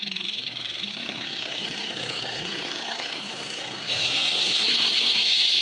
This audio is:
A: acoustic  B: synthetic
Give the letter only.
B